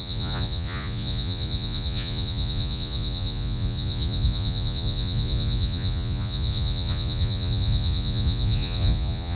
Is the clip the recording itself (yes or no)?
no